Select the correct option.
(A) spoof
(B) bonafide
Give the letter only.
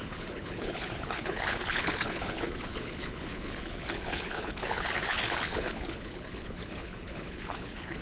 A